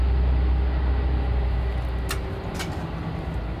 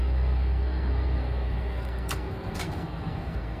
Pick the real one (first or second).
first